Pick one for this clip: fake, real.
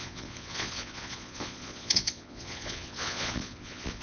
fake